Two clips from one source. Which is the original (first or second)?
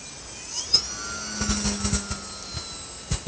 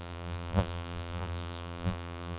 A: first